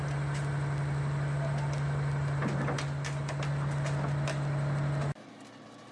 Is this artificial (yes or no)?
no